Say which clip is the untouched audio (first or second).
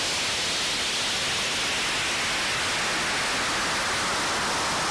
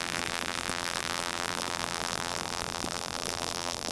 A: first